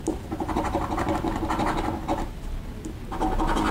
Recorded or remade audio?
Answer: recorded